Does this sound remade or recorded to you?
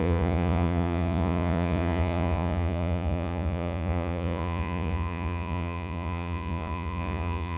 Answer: remade